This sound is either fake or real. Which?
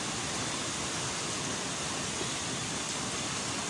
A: real